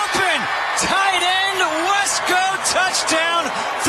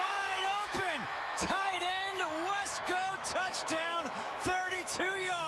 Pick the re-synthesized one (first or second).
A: second